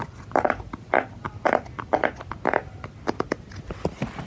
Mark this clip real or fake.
real